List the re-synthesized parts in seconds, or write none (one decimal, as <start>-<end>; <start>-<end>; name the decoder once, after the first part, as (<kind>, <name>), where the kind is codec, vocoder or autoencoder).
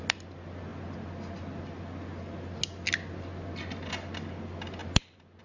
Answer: none